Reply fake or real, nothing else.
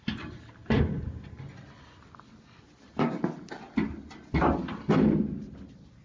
real